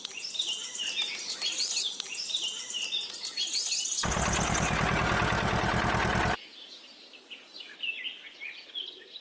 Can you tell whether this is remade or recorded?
recorded